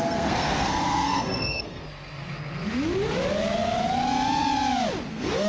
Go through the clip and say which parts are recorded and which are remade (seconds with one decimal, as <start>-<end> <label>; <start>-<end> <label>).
0.0-1.8 remade; 1.8-5.1 recorded; 5.1-5.5 remade